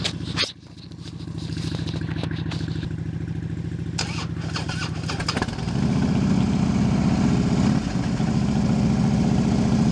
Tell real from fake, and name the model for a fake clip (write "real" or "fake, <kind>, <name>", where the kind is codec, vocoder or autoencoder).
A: real